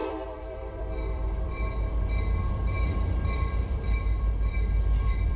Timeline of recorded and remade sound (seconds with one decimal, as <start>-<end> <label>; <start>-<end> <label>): 0.0-5.4 remade